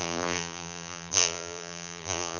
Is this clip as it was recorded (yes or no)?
no